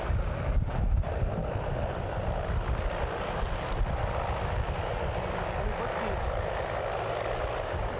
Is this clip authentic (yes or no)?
yes